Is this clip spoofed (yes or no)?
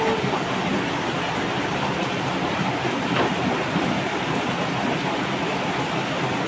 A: no